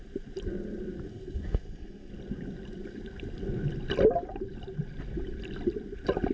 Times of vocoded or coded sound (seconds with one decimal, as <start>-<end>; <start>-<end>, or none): 1.1-2.1